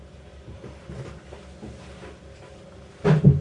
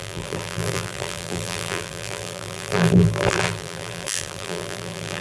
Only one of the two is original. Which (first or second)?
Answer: first